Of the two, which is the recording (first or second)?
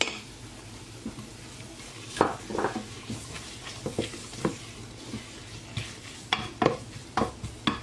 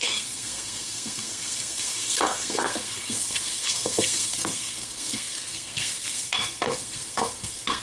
first